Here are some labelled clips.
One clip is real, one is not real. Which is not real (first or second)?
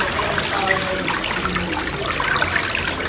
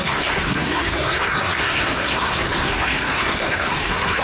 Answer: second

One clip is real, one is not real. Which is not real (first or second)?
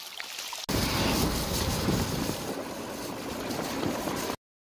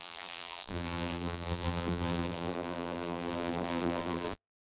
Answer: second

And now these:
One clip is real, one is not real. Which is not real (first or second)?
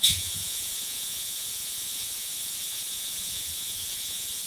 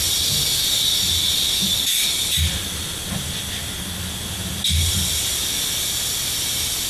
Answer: first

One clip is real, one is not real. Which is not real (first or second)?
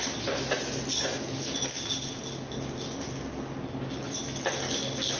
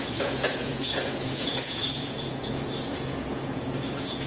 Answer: second